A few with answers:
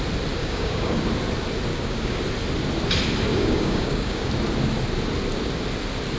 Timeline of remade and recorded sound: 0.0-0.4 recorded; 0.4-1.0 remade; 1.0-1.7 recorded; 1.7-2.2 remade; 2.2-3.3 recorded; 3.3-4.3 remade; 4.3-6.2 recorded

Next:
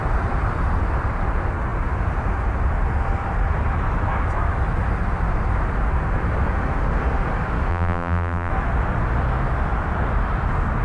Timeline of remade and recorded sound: 0.0-7.7 recorded; 7.7-8.5 remade; 8.5-10.8 recorded

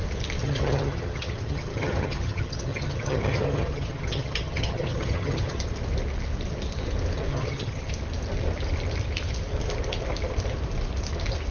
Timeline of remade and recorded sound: 0.0-0.4 recorded; 0.4-5.6 remade; 5.6-7.3 recorded; 7.3-7.9 remade; 7.9-11.5 recorded

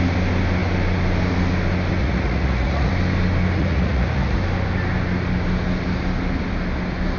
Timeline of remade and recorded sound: 0.0-2.0 recorded; 2.0-2.9 remade; 2.9-3.6 recorded; 3.6-4.4 remade; 4.4-7.2 recorded

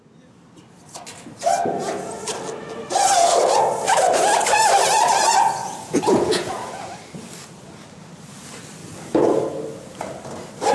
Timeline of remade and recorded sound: 0.0-1.6 recorded; 1.6-2.2 remade; 2.2-5.6 recorded; 5.6-6.9 remade; 6.9-10.7 recorded

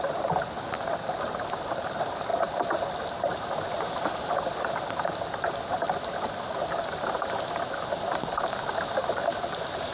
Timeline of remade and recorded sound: 0.0-9.9 recorded